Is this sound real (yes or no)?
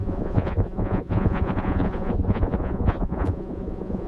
no